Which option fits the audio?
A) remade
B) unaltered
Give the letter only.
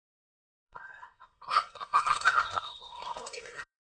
A